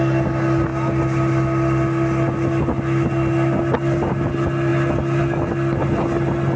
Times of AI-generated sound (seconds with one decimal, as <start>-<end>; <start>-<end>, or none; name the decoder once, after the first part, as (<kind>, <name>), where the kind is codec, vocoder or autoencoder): none